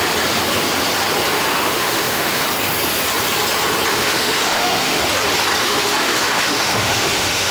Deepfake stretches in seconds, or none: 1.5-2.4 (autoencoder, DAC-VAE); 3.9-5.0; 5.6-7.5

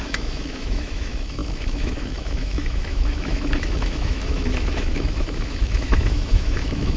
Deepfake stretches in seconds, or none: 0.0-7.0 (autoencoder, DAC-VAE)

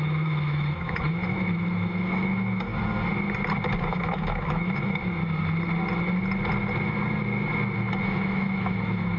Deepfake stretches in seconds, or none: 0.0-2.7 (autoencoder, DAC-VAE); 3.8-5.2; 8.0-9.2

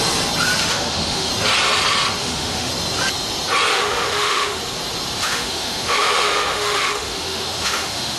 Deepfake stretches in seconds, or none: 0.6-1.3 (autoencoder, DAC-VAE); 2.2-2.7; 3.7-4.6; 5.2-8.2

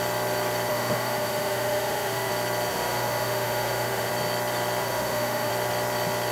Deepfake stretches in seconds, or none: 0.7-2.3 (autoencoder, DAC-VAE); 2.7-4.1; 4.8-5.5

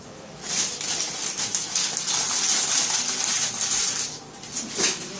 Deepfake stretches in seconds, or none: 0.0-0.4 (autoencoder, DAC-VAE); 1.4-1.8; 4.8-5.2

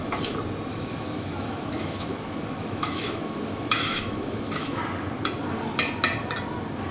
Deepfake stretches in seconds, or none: 0.7-4.8 (autoencoder, DAC-VAE)

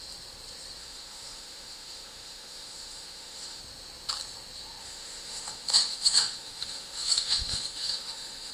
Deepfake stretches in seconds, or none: 0.8-3.6 (autoencoder, DAC-VAE); 4.8-8.5